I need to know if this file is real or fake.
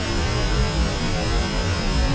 real